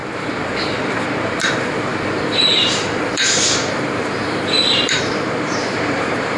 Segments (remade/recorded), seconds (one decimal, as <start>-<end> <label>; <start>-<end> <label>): 0.0-6.4 remade